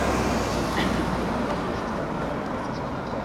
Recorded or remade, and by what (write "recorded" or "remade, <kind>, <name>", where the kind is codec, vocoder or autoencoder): recorded